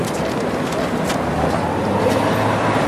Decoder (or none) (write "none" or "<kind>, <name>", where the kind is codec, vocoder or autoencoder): none